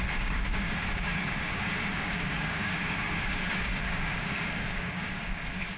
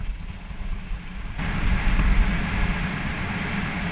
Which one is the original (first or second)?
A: second